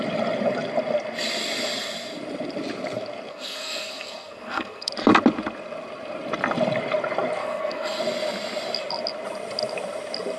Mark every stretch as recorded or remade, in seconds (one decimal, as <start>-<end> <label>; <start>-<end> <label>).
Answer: 0.0-3.3 recorded; 3.3-4.9 remade; 4.9-7.4 recorded; 7.4-8.0 remade; 8.0-10.4 recorded